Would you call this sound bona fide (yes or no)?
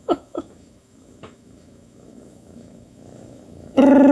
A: no